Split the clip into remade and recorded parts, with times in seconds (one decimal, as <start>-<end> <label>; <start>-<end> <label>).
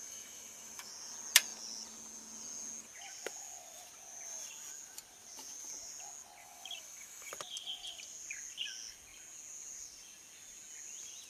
0.0-0.9 remade; 0.9-6.4 recorded; 6.4-7.3 remade; 7.3-11.3 recorded